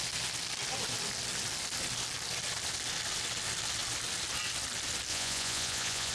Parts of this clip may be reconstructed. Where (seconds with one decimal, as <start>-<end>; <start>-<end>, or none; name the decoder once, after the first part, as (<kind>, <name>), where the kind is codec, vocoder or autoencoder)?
5.1-6.1 (vocoder, Vocos)